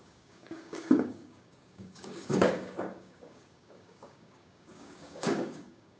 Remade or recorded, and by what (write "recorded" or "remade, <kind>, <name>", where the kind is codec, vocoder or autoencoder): remade, codec, DAC